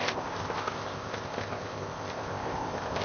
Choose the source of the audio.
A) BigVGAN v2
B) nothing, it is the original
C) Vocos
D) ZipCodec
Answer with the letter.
D